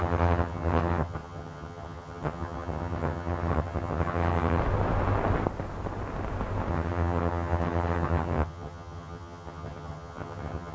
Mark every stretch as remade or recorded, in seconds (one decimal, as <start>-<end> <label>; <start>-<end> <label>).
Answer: 0.0-4.6 remade; 4.6-6.7 recorded; 6.7-10.7 remade